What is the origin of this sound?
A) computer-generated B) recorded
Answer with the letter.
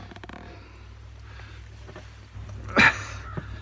B